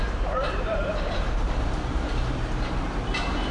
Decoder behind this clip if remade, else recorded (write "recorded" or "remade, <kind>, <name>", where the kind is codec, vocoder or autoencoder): remade, vocoder, BigVGAN v2